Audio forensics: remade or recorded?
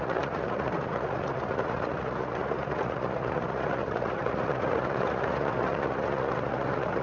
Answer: remade